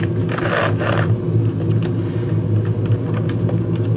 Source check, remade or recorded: recorded